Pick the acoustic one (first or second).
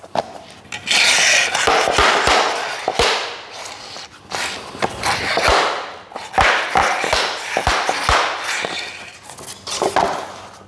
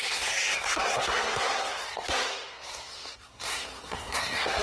first